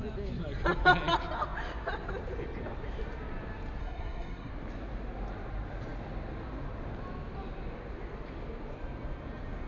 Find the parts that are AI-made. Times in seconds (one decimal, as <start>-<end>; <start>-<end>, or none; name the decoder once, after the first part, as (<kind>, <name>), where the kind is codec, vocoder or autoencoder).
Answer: 3.8-4.5 (codec, SNAC)